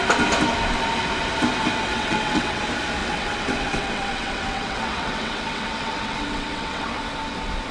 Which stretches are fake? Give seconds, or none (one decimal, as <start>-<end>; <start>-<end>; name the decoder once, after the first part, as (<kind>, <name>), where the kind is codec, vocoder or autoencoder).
1.9-2.6 (vocoder, WaveNeXt); 3.0-7.0